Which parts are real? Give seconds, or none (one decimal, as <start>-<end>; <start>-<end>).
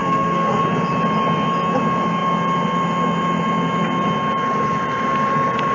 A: 0.6-5.7